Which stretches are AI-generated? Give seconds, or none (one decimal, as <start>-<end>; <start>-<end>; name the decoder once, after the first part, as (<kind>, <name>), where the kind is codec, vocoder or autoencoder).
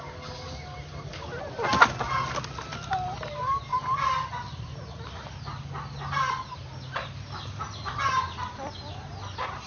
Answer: none